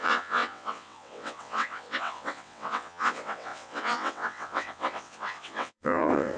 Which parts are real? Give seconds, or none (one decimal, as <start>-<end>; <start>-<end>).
none